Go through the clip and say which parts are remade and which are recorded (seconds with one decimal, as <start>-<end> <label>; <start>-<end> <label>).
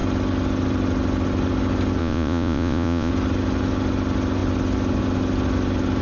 0.0-2.0 recorded; 2.0-3.1 remade; 3.1-6.0 recorded